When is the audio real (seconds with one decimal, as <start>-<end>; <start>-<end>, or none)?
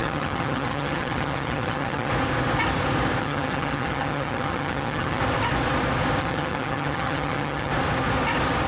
2.1-3.2; 5.2-6.2; 7.7-8.7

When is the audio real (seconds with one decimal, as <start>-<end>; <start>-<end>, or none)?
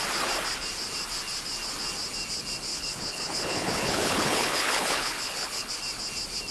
0.0-2.7; 5.7-6.5